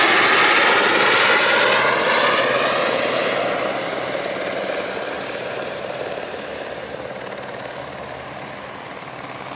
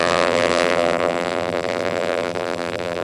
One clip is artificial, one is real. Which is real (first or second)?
first